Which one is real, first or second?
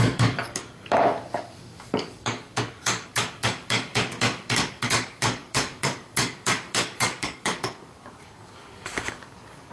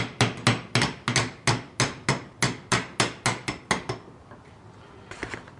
second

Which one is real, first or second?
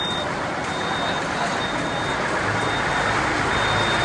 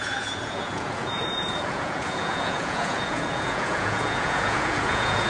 first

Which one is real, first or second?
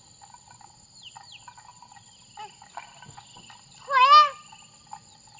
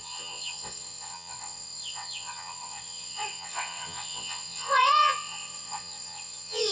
first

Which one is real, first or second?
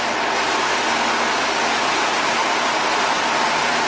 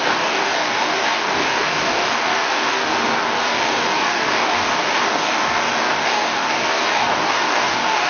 first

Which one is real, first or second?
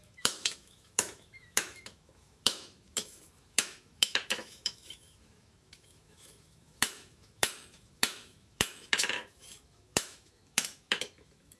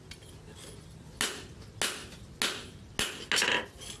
second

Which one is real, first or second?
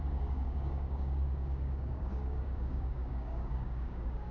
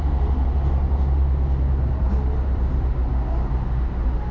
second